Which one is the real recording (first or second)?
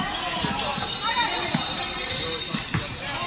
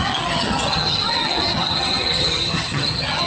first